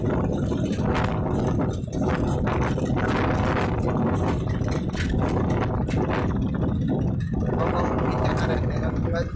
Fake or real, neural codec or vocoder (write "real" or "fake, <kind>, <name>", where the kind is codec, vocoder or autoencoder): real